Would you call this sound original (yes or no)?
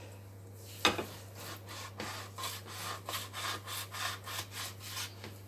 yes